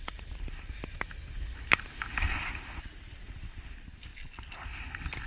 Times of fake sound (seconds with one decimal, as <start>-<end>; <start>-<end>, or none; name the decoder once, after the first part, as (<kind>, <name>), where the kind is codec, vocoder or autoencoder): none